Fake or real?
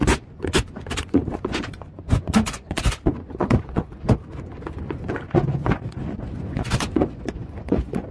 fake